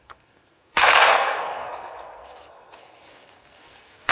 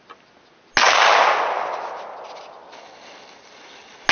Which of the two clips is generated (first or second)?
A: first